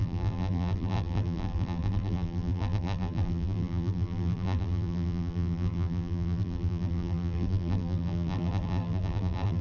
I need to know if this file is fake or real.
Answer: fake